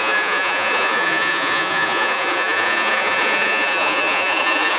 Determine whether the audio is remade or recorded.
remade